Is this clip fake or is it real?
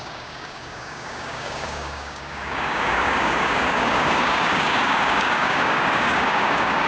fake